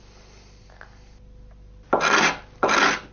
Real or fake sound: real